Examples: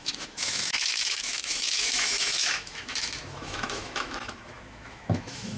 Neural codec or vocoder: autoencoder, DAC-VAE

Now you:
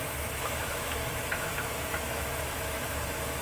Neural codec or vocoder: autoencoder, DAC-VAE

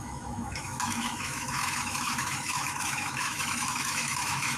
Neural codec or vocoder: autoencoder, DAC-VAE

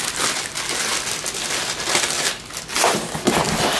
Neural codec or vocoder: none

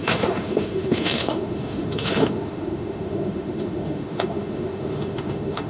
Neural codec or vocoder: autoencoder, DAC-VAE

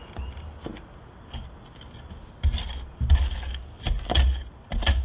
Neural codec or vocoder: none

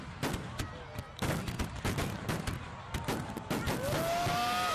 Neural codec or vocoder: none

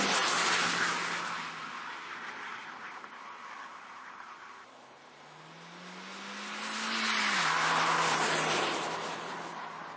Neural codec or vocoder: none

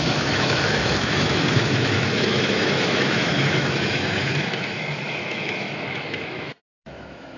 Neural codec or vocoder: autoencoder, DAC-VAE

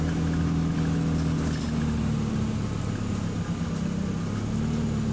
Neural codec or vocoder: none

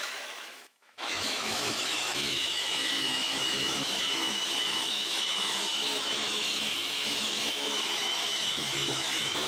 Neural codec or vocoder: autoencoder, DAC-VAE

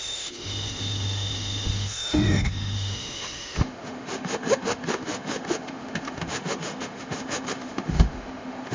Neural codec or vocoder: autoencoder, DAC-VAE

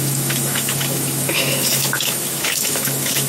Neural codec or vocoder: autoencoder, DAC-VAE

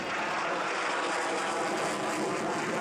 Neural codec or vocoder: none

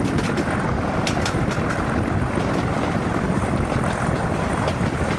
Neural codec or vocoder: none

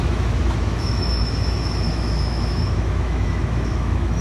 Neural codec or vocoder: autoencoder, DAC-VAE